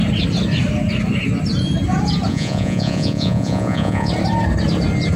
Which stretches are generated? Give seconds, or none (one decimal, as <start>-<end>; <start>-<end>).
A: 2.3-4.1